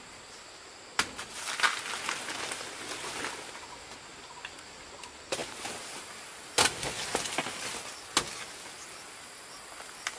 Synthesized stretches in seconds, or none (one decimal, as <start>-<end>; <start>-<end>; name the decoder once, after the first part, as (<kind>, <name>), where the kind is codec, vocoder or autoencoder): none